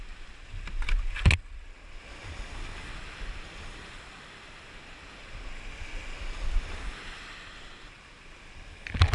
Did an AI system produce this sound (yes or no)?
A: no